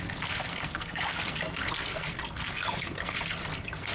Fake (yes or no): yes